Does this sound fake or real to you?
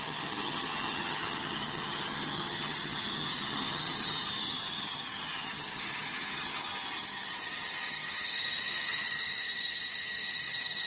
fake